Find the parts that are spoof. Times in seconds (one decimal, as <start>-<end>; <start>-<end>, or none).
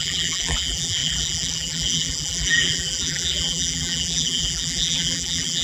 0.0-5.6